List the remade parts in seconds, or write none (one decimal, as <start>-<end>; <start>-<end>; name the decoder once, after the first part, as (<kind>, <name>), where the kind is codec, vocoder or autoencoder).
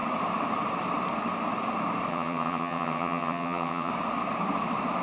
2.1-3.9 (vocoder, HiFi-GAN)